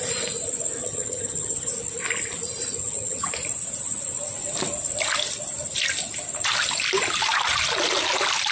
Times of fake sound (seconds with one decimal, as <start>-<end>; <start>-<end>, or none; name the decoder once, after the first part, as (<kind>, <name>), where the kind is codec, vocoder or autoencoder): 0.8-1.7 (vocoder, HiFi-GAN); 2.8-3.3